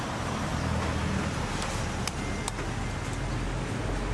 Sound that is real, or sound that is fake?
real